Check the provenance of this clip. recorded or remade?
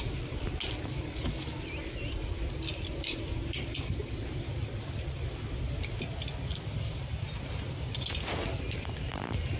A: recorded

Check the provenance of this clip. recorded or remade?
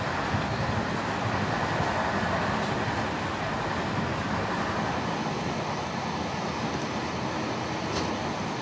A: recorded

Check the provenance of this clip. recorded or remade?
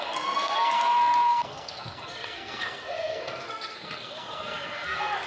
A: remade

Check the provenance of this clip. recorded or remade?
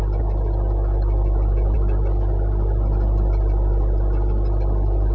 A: recorded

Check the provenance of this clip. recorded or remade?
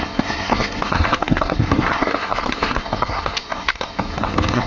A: remade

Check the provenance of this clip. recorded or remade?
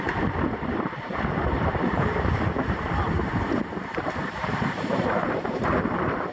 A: remade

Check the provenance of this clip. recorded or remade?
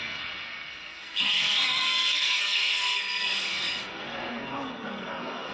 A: remade